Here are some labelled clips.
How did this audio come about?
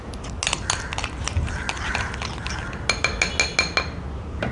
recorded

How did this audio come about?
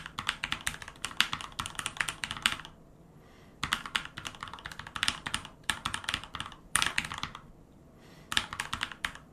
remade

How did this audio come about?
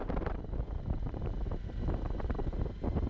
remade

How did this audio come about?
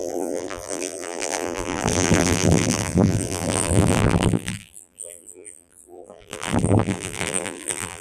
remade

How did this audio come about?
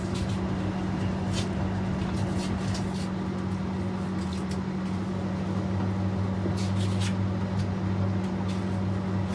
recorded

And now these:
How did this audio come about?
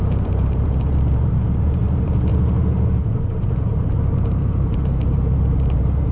remade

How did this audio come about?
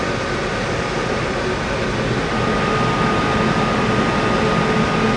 recorded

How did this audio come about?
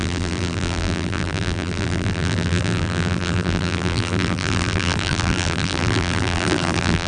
remade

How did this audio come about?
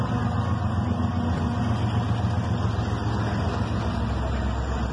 recorded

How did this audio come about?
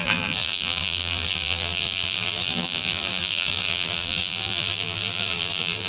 remade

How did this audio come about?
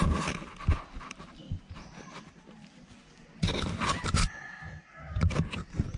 remade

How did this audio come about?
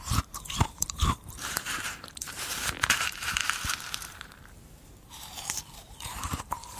remade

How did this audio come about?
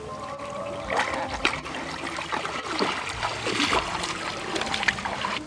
recorded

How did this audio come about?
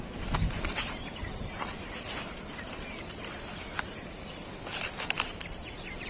remade